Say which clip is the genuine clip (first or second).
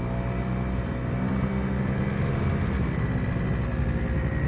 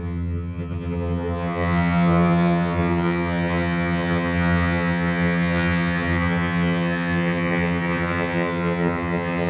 first